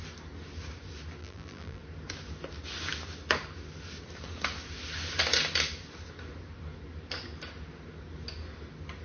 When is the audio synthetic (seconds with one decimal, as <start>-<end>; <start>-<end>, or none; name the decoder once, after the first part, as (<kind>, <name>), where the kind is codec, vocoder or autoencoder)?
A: 1.2-1.8 (vocoder, BigVGAN v2)